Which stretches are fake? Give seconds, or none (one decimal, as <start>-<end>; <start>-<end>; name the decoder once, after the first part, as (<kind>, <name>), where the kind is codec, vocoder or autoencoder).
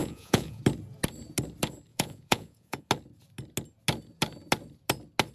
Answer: 0.0-0.6 (vocoder, Vocos); 1.9-2.9